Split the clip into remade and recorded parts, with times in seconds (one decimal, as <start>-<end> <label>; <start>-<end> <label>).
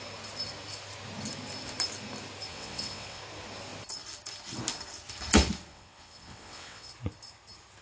0.0-2.5 recorded; 2.5-3.2 remade; 3.2-5.7 recorded; 5.7-6.9 remade; 6.9-7.8 recorded